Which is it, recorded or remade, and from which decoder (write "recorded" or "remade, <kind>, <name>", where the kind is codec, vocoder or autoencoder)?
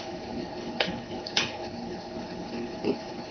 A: remade, codec, HILCodec